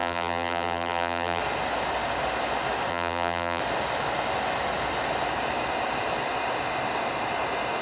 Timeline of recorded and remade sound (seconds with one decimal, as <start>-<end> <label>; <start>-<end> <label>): 0.0-1.4 remade; 1.4-2.9 recorded; 2.9-3.6 remade; 3.6-7.8 recorded